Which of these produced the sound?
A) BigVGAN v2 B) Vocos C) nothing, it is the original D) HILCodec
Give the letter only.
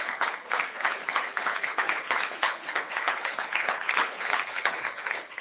D